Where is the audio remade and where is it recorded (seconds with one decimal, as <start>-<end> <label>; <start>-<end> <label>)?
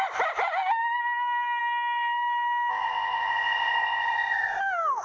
0.0-2.7 recorded; 2.7-4.6 remade; 4.6-5.0 recorded